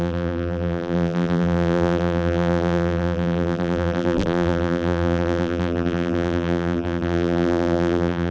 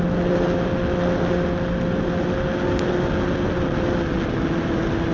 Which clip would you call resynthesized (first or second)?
first